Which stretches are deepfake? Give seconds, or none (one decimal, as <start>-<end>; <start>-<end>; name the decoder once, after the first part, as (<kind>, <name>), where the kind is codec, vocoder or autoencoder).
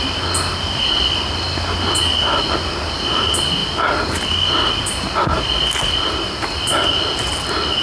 none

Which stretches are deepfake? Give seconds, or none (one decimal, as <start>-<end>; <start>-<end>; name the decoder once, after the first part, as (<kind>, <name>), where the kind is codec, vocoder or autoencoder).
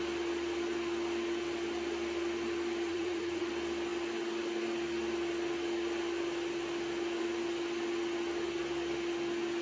2.9-3.5 (vocoder, Vocos)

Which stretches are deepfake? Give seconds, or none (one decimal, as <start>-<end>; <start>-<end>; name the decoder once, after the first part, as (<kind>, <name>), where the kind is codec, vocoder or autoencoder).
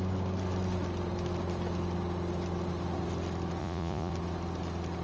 3.6-4.1 (vocoder, Vocos)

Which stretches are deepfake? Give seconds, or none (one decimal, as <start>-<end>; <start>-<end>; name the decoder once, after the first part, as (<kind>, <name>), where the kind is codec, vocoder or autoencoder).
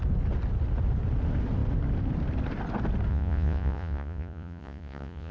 3.1-5.3 (vocoder, Vocos)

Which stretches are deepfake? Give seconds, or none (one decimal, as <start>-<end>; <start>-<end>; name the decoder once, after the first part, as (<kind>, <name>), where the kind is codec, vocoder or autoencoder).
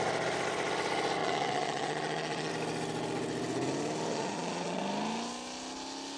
1.2-2.5 (vocoder, Vocos); 4.1-4.8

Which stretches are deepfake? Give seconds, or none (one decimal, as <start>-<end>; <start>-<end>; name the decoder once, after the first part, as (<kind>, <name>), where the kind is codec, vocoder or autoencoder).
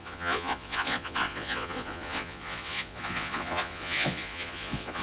0.0-5.0 (vocoder, Vocos)